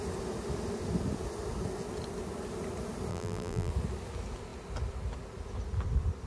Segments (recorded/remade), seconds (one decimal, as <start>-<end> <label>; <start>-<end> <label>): 0.0-3.1 recorded; 3.1-3.7 remade; 3.7-6.3 recorded